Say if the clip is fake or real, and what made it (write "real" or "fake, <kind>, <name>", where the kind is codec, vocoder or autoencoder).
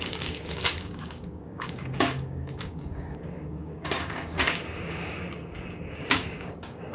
fake, codec, DAC